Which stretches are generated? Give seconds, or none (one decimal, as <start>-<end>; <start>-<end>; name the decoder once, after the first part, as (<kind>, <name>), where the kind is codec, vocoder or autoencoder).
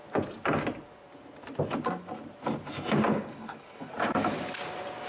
3.1-3.9 (codec, HILCodec)